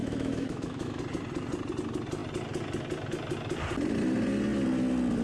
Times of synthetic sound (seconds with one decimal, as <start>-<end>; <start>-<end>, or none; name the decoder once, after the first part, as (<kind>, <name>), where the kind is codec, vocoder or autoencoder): 0.0-1.0 (autoencoder, DAC-VAE)